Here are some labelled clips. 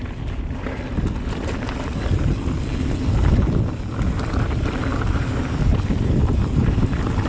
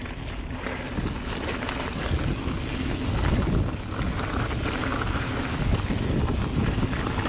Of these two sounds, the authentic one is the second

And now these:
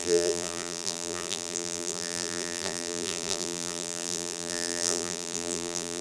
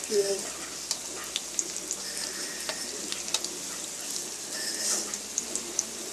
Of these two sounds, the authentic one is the second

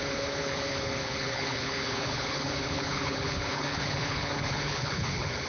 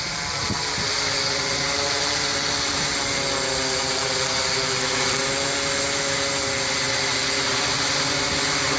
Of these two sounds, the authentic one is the second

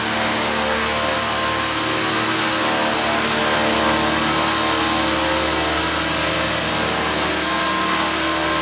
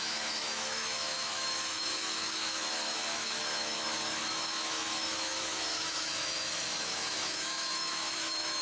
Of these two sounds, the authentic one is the first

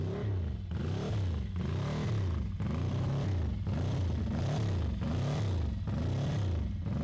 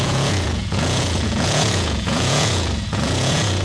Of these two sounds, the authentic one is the first